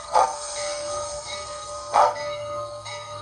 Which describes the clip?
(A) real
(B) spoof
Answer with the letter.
B